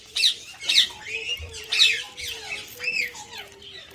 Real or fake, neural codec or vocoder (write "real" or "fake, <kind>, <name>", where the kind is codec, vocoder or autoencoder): real